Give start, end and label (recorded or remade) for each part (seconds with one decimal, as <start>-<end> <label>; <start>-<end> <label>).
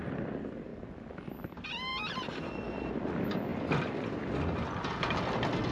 0.0-1.9 recorded; 1.9-2.9 remade; 2.9-5.7 recorded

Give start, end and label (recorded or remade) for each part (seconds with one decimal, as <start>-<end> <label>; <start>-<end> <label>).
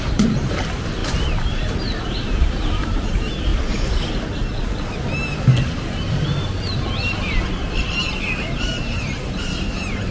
0.0-1.0 remade; 1.0-2.0 recorded; 2.0-3.5 remade; 3.5-8.6 recorded; 8.6-10.1 remade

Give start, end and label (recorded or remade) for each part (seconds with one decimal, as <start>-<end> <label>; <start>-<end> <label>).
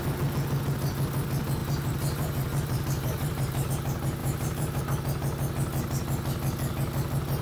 0.0-1.6 recorded; 1.6-3.7 remade; 3.7-4.2 recorded; 4.2-4.8 remade; 4.8-7.4 recorded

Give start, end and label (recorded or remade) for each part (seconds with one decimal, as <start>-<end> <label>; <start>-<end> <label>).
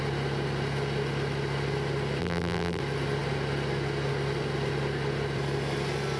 0.0-2.2 recorded; 2.2-2.8 remade; 2.8-6.2 recorded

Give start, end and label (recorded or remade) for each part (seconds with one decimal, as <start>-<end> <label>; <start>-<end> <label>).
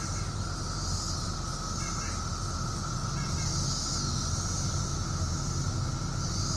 0.0-1.0 remade; 1.0-6.6 recorded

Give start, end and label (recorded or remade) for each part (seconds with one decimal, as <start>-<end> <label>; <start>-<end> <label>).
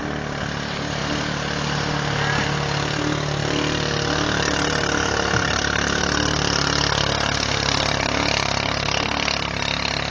0.0-1.0 recorded; 1.0-1.9 remade; 1.9-3.4 recorded; 3.4-4.4 remade; 4.4-10.1 recorded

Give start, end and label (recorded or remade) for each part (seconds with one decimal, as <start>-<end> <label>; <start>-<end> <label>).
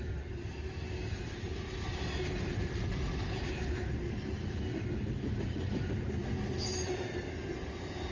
0.0-8.1 recorded